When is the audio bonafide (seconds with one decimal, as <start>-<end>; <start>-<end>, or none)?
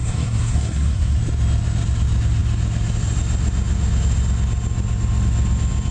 1.2-5.9